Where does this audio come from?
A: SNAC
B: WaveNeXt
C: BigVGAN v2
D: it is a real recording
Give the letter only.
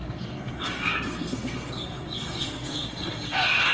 A